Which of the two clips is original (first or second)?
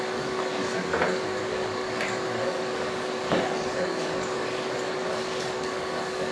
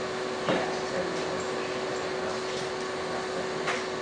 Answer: second